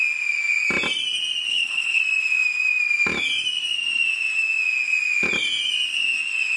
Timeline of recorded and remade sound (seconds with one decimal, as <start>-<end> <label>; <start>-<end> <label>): 0.0-1.5 recorded; 1.5-2.0 remade; 2.0-6.6 recorded